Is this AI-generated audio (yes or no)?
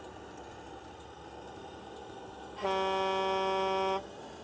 no